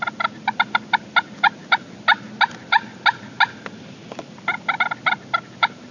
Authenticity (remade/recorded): recorded